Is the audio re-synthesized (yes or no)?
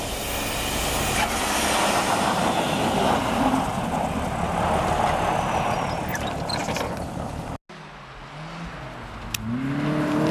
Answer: no